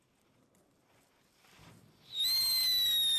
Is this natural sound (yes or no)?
yes